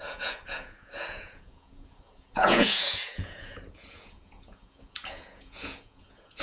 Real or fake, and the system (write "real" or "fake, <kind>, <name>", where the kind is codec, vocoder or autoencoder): fake, vocoder, Vocos